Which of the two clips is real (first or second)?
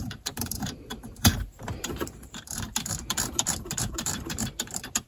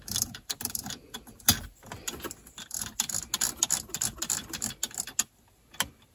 second